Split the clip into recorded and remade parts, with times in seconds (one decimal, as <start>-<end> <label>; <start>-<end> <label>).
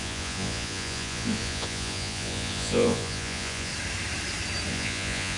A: 0.0-3.7 remade; 3.7-4.7 recorded; 4.7-5.4 remade